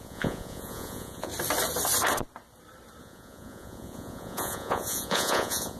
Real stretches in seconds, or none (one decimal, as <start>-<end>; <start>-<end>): 1.3-3.0